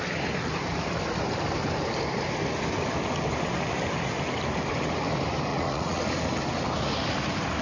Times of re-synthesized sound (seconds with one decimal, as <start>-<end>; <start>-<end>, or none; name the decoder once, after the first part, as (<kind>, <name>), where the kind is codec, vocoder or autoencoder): 5.5-6.0 (vocoder, Vocos)